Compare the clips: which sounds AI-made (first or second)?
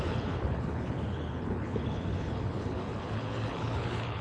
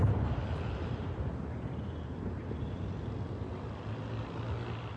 first